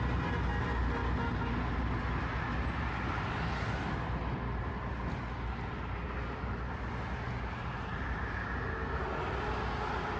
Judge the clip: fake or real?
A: real